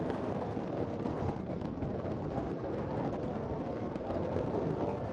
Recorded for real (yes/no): no